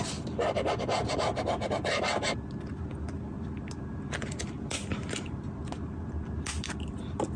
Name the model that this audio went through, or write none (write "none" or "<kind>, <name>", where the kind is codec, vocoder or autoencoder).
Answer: none